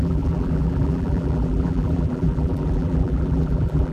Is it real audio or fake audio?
fake